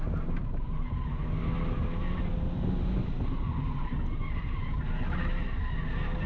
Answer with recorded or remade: recorded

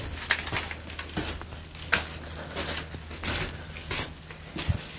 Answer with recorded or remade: recorded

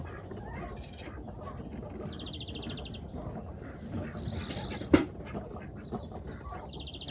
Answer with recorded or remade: recorded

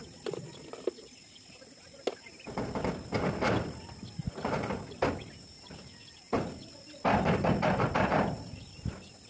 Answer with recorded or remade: recorded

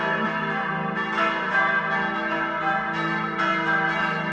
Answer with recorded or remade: recorded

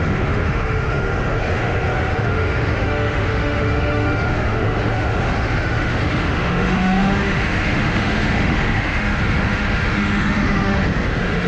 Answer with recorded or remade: remade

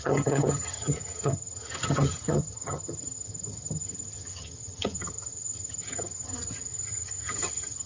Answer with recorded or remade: remade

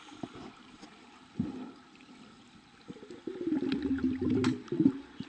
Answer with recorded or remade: recorded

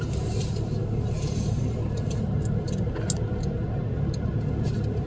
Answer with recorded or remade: recorded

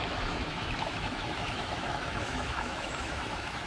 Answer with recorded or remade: remade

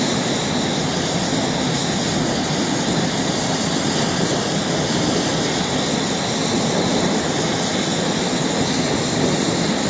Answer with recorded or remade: recorded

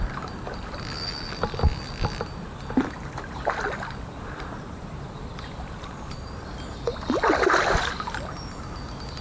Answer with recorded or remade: remade